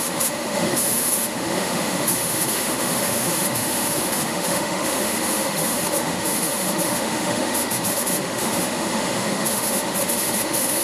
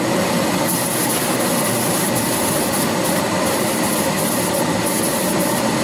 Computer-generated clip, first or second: first